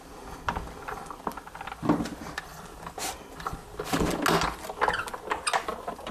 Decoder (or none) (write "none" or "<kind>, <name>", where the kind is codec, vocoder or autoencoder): none